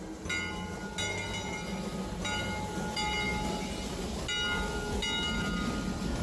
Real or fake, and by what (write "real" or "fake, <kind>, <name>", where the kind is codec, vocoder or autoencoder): real